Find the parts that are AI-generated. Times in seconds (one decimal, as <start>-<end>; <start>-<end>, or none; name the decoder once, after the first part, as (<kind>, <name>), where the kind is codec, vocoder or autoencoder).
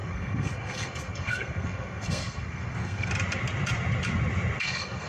0.0-3.1 (codec, SNAC); 4.6-5.1